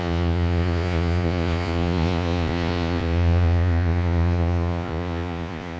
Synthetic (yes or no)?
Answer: yes